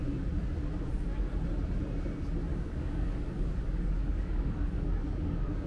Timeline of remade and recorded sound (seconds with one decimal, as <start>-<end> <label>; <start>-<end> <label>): 0.0-2.5 recorded; 2.5-5.7 remade

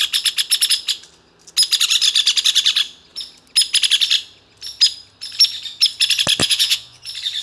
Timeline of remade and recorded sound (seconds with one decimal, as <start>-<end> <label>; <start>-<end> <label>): 0.0-6.4 recorded; 6.4-7.0 remade; 7.0-7.4 recorded

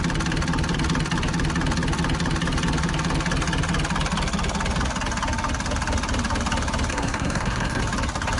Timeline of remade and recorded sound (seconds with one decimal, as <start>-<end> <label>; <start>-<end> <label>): 0.0-6.9 recorded; 6.9-7.8 remade; 7.8-8.4 recorded

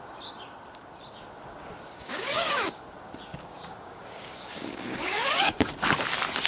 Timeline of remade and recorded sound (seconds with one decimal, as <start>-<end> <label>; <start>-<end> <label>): 0.0-1.9 recorded; 1.9-2.8 remade; 2.8-3.3 recorded; 3.3-5.7 remade; 5.7-6.5 recorded